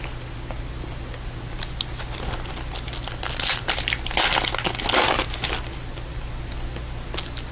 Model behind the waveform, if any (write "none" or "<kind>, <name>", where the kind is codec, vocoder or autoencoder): none